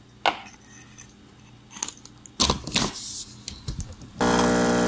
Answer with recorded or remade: recorded